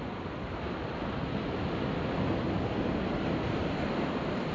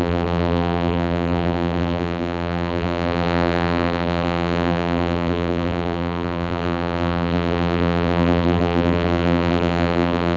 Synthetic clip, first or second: second